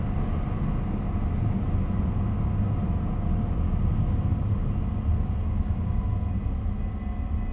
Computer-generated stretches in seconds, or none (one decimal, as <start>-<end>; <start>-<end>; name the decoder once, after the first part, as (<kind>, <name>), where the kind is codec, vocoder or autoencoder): none